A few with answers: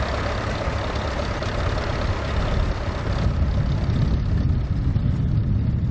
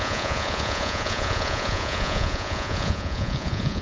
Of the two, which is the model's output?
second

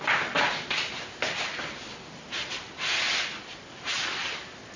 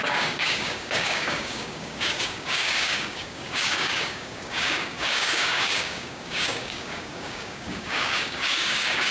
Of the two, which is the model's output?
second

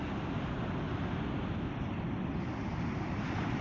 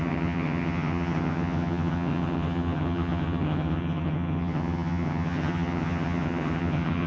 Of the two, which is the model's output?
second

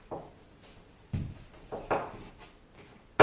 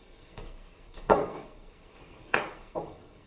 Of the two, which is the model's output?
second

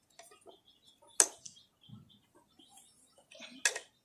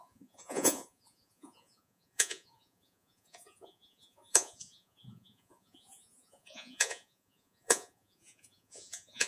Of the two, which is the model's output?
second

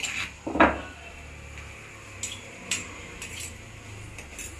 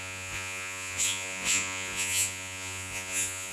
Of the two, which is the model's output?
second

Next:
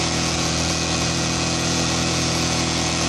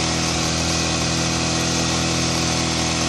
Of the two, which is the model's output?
first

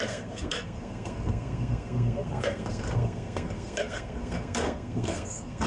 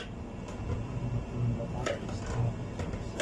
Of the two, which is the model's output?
first